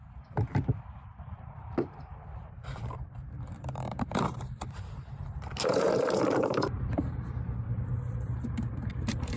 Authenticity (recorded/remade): remade